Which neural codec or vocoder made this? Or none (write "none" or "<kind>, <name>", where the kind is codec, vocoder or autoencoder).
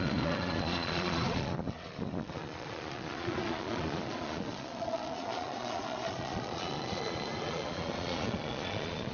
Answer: vocoder, Vocos